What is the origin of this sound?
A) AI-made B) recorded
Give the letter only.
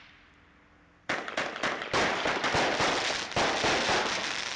B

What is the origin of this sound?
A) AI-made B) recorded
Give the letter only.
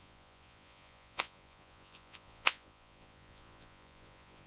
A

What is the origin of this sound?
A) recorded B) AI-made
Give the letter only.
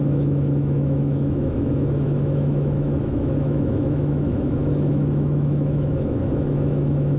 B